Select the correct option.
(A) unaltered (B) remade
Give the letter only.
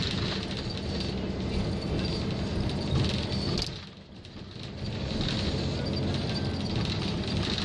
A